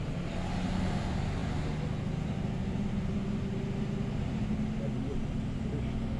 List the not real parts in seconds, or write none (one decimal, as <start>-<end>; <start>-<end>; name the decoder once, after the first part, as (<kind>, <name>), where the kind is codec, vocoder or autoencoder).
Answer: none